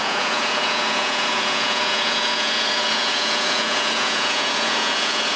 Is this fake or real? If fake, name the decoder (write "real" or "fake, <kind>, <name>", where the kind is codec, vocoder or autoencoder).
fake, vocoder, Vocos